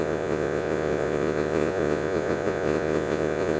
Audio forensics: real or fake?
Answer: fake